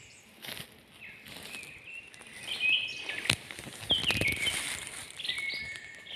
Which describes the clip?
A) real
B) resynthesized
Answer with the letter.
A